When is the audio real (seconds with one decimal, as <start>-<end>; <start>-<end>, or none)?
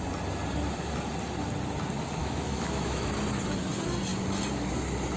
0.0-2.2; 3.1-5.2